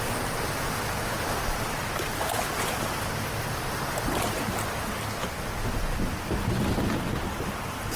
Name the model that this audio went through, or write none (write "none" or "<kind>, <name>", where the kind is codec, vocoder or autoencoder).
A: none